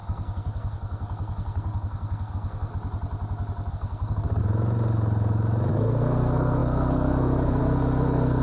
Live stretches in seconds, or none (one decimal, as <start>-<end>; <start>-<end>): 2.7-3.7; 4.4-5.7